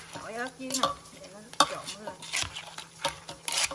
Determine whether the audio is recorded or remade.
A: recorded